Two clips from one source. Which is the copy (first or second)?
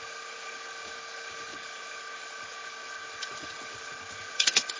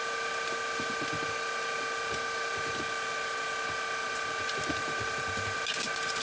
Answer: first